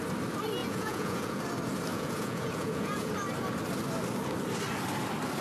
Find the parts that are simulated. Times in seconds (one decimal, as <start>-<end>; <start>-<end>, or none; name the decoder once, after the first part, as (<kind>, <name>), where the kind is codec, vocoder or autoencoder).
0.6-1.4 (vocoder, Vocos); 1.9-3.1